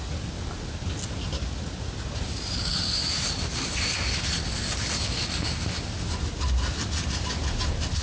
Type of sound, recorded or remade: recorded